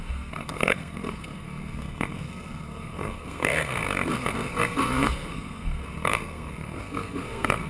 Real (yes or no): no